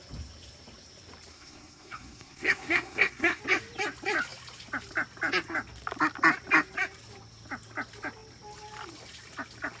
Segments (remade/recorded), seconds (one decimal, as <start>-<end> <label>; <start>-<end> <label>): 0.0-1.3 recorded; 1.3-3.4 remade; 3.4-9.8 recorded